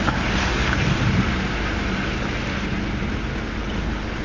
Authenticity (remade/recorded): recorded